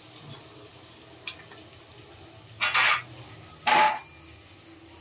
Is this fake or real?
real